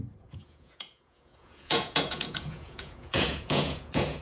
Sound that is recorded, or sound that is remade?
remade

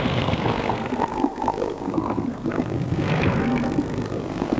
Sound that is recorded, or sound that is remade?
remade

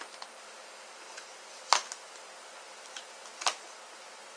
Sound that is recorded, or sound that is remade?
recorded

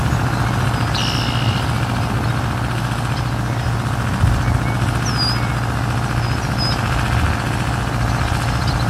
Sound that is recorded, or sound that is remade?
recorded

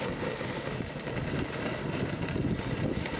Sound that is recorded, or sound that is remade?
recorded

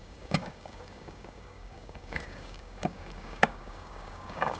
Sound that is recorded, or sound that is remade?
remade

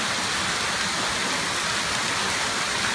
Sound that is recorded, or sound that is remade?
recorded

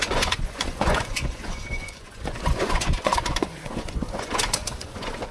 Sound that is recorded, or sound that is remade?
remade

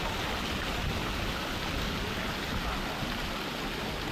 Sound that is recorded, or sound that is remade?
recorded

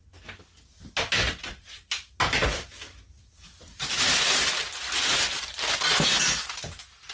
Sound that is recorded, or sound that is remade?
recorded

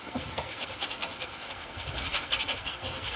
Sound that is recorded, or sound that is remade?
remade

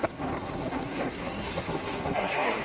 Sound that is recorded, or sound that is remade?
remade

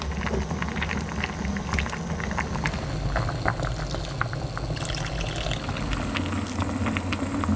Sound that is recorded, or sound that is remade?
recorded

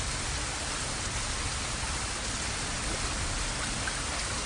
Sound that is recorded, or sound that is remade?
recorded